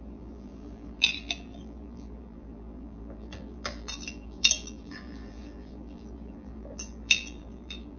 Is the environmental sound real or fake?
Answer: fake